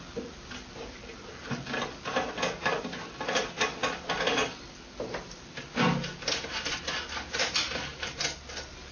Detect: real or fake real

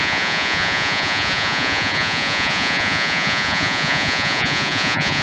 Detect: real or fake fake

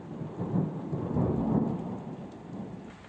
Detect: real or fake real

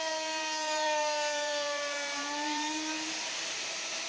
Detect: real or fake fake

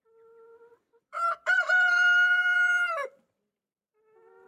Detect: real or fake fake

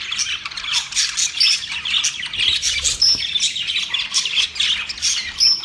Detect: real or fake real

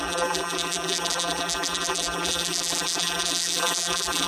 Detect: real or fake fake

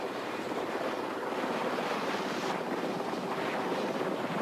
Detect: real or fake fake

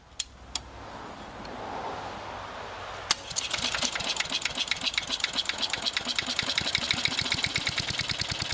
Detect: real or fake real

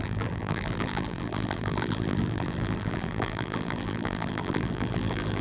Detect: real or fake fake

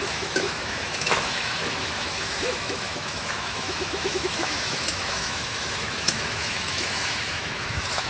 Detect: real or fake fake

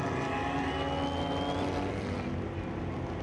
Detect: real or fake real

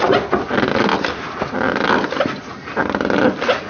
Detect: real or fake real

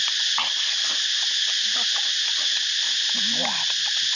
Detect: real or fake real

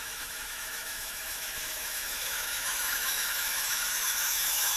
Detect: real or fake fake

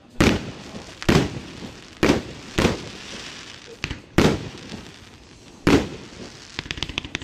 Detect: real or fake fake